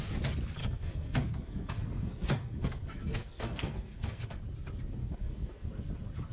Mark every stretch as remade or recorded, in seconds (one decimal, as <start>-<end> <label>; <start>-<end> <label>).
0.0-0.6 recorded; 0.6-4.4 remade; 4.4-5.0 recorded; 5.0-5.7 remade; 5.7-6.3 recorded